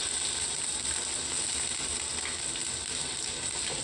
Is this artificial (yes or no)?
no